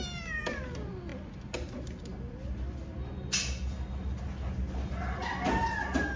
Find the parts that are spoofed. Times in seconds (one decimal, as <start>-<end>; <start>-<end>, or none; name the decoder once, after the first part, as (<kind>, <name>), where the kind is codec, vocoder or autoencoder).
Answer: none